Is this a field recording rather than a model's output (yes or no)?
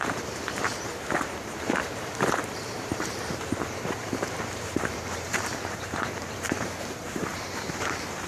no